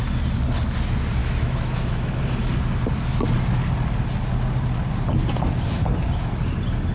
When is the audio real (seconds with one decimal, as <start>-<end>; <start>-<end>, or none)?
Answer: 0.0-1.2; 2.2-6.9